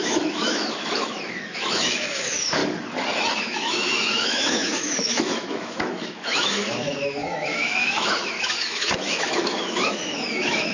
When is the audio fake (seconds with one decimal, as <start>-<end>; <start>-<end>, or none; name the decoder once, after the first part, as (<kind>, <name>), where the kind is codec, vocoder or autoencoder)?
0.0-2.6 (autoencoder, DAC-VAE); 3.4-10.7